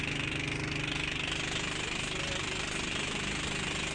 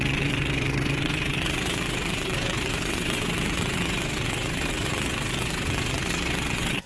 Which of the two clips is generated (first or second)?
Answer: second